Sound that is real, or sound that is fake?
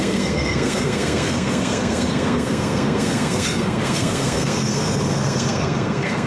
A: fake